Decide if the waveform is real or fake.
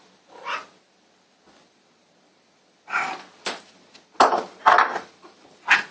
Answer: real